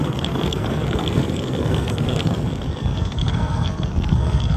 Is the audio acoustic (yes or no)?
no